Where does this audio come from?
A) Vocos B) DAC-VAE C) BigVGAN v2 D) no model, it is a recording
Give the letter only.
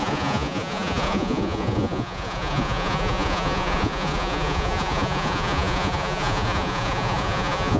A